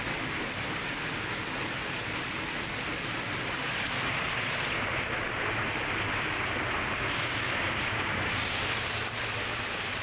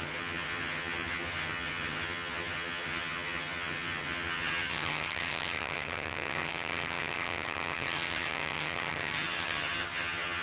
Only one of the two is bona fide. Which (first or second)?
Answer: first